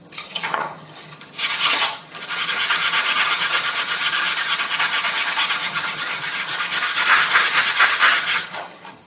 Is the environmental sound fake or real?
fake